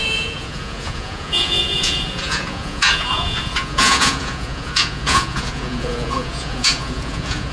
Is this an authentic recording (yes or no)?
no